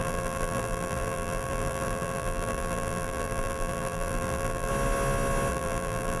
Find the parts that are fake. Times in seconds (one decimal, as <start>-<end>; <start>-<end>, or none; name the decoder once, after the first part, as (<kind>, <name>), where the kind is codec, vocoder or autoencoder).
0.0-4.7 (vocoder, BigVGAN v2); 5.5-6.2